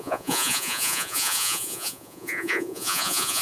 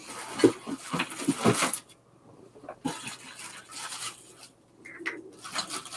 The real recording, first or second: second